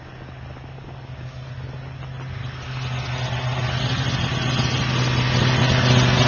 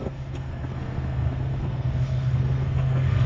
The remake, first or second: second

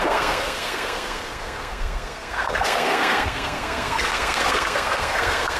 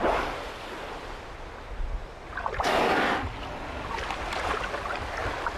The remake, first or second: first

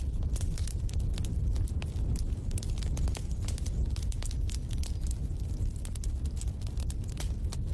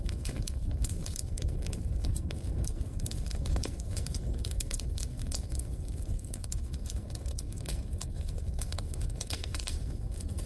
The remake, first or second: second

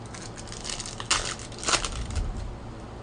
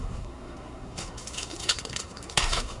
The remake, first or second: second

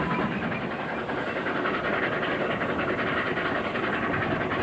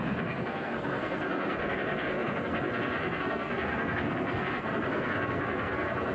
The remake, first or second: second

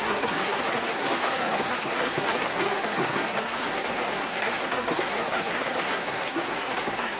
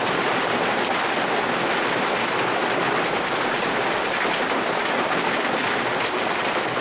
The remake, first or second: first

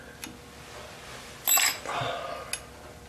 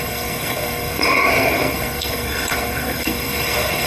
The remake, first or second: second